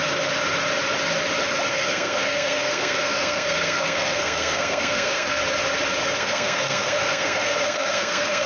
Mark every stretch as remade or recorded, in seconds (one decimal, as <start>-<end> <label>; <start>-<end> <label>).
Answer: 0.0-1.7 recorded; 1.7-5.4 remade; 5.4-6.2 recorded; 6.2-8.5 remade